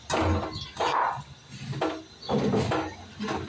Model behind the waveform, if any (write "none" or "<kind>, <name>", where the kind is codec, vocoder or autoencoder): none